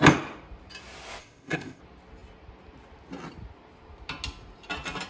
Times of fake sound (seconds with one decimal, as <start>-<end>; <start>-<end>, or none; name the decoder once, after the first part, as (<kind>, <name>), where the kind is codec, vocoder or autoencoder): 1.2-1.8 (codec, ZipCodec)